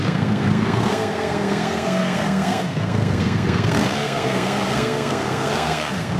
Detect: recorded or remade remade